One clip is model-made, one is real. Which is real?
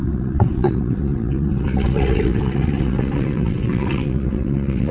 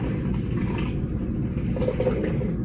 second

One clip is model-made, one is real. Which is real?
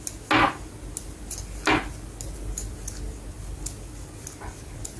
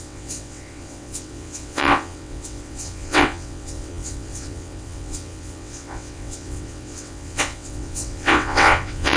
first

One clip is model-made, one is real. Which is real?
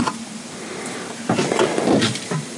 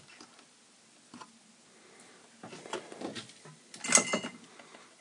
second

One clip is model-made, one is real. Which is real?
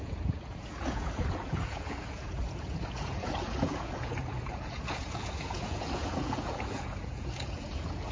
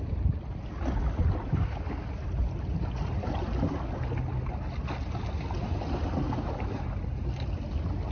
second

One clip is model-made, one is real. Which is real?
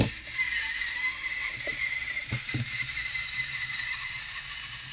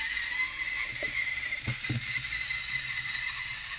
second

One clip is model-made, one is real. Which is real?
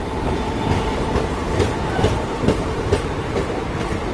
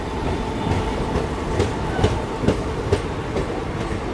second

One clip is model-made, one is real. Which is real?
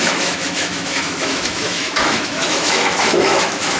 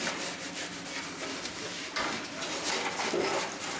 second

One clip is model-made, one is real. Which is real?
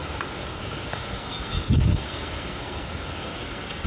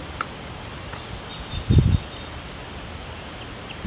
second